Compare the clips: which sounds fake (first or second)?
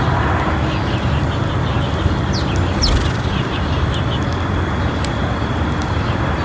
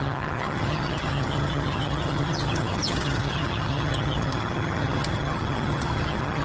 second